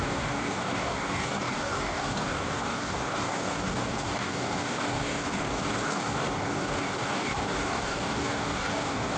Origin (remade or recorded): remade